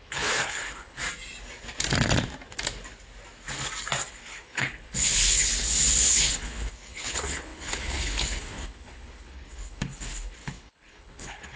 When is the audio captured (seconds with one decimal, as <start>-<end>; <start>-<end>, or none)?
1.0-4.1; 5.5-6.1